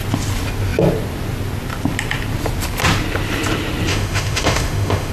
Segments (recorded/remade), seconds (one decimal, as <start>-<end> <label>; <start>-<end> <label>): 0.0-3.9 recorded; 3.9-5.1 remade